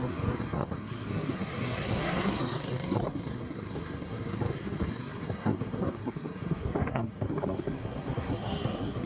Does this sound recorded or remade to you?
remade